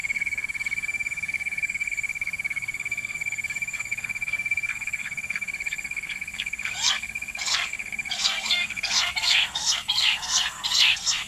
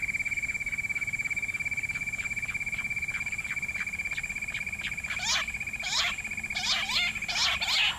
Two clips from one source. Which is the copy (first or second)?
first